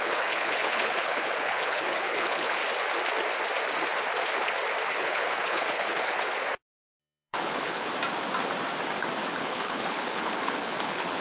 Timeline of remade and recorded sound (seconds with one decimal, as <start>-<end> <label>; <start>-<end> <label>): 0.0-2.6 remade; 2.6-4.9 recorded; 4.9-6.3 remade; 6.3-7.0 recorded; 7.0-7.9 remade; 7.9-9.4 recorded; 9.4-11.2 remade